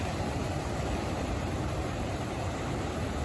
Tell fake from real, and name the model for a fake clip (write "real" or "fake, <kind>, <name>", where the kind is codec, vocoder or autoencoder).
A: fake, vocoder, BigVGAN v2